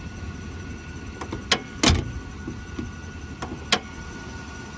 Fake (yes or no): no